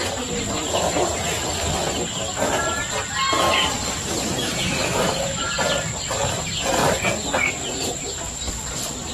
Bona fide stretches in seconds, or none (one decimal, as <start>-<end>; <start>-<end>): 0.0-4.4; 5.5-9.1